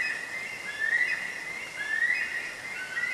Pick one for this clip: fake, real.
real